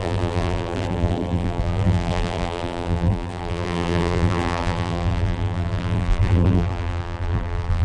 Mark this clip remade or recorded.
remade